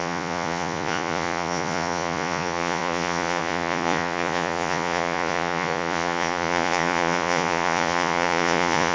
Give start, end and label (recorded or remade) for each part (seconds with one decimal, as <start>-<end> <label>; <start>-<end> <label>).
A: 0.0-8.9 remade